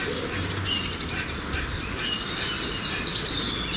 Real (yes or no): yes